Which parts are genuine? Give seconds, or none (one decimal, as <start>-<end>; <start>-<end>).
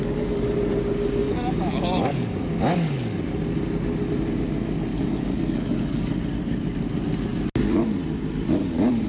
0.0-1.2; 3.2-4.9; 6.1-9.1